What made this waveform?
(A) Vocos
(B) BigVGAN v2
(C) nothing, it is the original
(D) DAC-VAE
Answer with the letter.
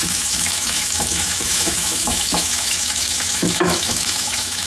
D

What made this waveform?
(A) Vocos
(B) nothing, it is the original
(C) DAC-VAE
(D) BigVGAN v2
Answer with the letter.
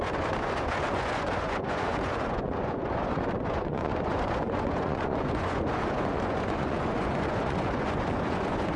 A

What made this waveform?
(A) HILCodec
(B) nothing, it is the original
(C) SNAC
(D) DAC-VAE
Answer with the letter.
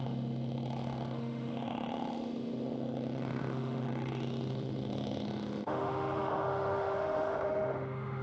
D